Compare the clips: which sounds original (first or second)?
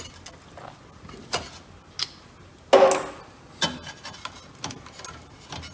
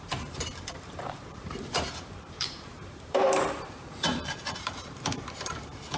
first